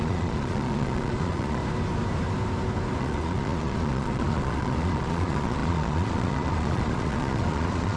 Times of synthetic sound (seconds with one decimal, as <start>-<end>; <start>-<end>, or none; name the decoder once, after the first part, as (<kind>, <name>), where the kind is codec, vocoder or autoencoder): 0.0-1.6 (vocoder, Vocos); 3.0-8.0